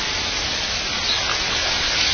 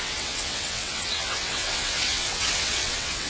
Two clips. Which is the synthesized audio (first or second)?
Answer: second